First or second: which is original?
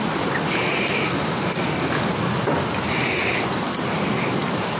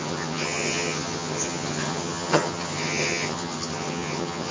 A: first